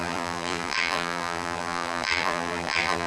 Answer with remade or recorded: remade